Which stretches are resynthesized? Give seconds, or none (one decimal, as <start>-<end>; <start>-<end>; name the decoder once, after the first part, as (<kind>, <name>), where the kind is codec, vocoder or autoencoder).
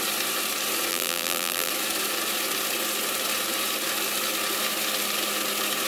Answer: 0.9-1.7 (vocoder, BigVGAN v2)